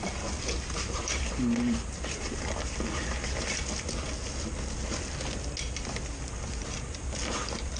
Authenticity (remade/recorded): recorded